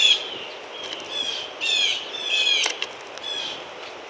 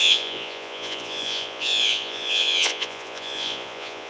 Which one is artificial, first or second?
second